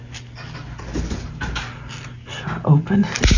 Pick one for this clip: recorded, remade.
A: recorded